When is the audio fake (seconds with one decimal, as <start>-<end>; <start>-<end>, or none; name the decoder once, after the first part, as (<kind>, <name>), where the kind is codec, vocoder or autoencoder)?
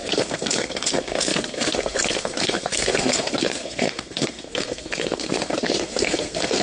0.0-6.6 (codec, SNAC)